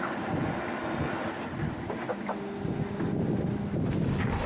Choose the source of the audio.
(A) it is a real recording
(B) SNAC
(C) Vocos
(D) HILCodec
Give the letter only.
A